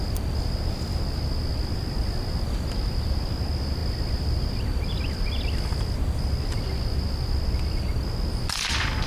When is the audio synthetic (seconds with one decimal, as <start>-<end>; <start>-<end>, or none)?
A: none